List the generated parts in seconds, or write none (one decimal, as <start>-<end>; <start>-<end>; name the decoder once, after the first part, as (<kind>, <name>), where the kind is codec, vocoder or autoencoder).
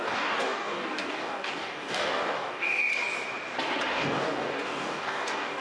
0.0-2.9 (codec, DAC); 3.9-5.6